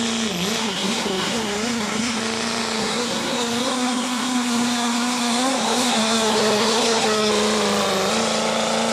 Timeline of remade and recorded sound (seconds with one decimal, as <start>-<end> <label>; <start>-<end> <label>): 0.0-0.6 recorded; 0.6-2.2 remade; 2.2-2.8 recorded; 2.8-7.3 remade; 7.3-8.9 recorded